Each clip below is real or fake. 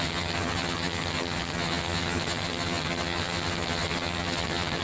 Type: fake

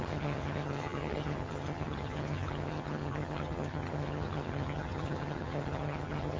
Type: fake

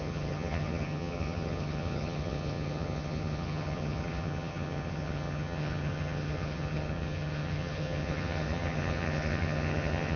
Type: fake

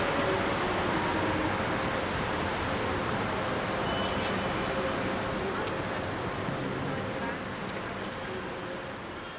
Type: real